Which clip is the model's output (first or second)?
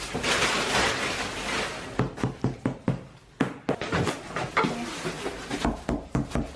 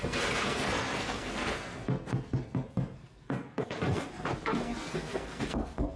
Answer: second